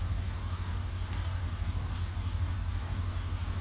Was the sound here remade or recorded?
remade